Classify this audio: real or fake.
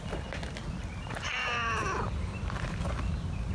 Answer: real